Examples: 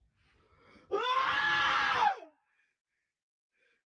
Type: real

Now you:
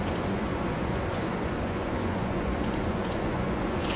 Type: fake